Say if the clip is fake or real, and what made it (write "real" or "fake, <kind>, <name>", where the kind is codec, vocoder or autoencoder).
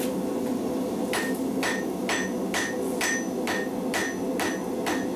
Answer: real